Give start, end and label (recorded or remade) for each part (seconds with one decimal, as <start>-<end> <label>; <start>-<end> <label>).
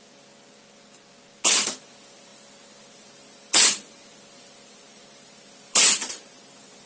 0.0-6.9 recorded